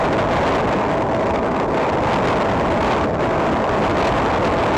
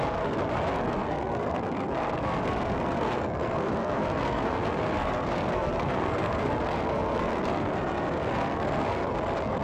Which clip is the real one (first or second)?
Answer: first